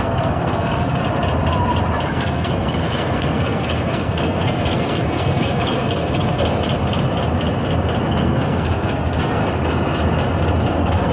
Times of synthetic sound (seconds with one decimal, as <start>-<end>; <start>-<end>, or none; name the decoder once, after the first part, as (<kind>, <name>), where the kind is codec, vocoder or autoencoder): 0.0-1.0 (codec, SNAC); 2.1-6.4; 8.1-9.4; 10.7-11.1